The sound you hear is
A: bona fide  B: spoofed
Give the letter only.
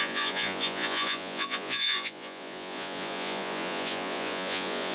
B